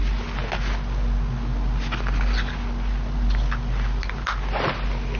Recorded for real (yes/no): yes